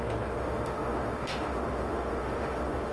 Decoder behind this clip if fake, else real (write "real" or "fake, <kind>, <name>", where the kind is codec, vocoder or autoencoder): fake, autoencoder, DAC-VAE